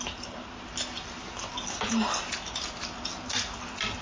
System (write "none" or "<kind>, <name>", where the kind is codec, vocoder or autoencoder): none